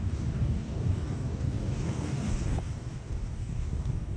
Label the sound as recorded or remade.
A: remade